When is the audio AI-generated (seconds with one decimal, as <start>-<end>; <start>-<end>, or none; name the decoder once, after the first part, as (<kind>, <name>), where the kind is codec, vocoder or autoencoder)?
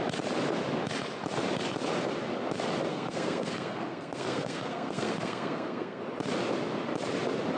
2.9-6.0 (codec, SNAC)